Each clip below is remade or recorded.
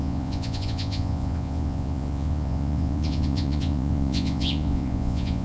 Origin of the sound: remade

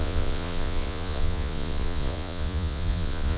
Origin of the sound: remade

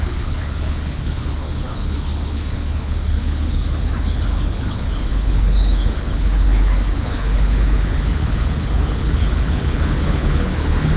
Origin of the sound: remade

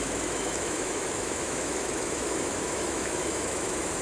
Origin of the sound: remade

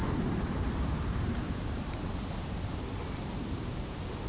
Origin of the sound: remade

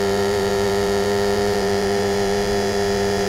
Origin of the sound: remade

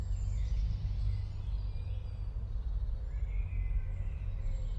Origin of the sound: recorded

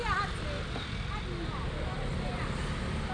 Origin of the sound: recorded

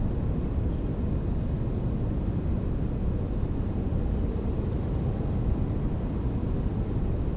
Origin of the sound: recorded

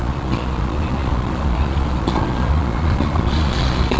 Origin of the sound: remade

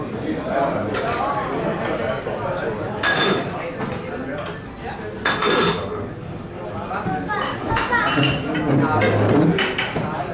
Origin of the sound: recorded